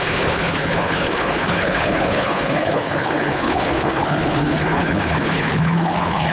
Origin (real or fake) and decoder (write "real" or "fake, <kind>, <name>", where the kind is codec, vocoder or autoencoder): fake, codec, HILCodec